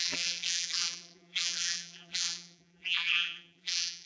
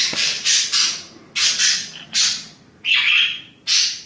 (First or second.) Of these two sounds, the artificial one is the first